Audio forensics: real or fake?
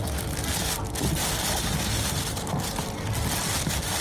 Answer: real